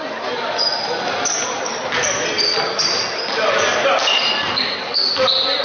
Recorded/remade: recorded